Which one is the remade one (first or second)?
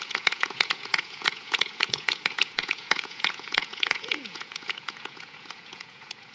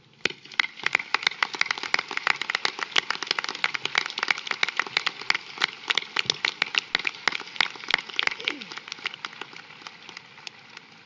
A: first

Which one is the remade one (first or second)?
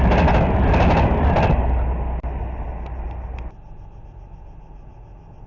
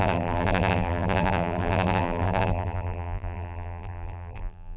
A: second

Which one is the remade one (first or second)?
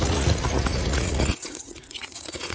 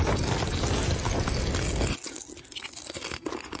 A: first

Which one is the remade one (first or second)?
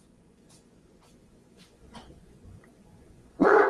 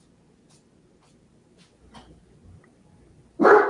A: first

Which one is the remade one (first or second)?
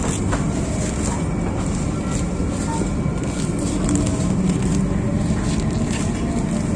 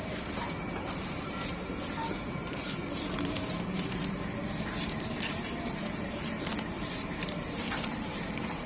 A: second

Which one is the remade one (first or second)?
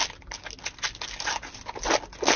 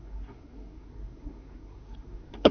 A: second